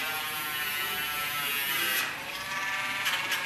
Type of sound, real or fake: real